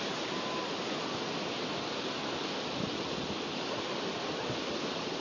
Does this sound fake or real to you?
real